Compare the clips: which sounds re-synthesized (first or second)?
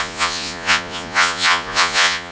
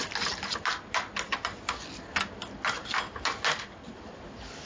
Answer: first